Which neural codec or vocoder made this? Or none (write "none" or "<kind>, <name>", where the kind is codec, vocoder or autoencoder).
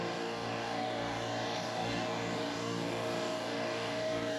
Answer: codec, DAC